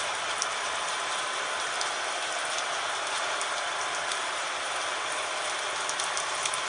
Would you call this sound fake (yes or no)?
no